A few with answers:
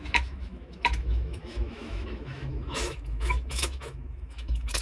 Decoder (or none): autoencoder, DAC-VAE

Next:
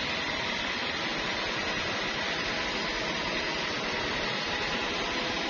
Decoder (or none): none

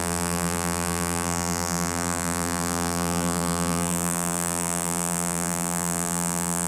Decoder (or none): vocoder, BigVGAN v2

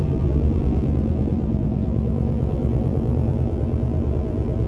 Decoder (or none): vocoder, BigVGAN v2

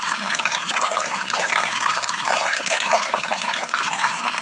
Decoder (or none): codec, SNAC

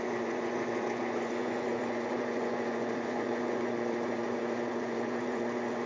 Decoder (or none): vocoder, Vocos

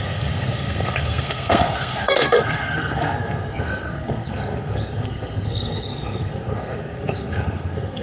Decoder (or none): codec, SNAC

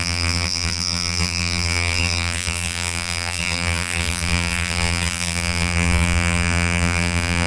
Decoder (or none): vocoder, BigVGAN v2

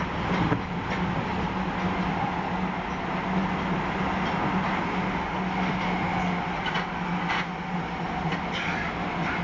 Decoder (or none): none